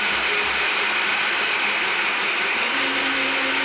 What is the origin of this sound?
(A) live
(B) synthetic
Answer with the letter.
A